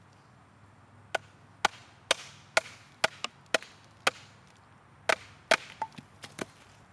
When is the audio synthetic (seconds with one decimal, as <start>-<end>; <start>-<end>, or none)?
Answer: none